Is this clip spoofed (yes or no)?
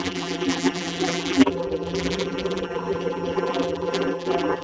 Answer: yes